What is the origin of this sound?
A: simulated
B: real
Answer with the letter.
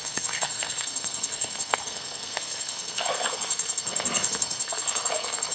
A